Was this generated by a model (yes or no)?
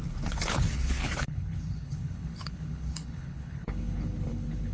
yes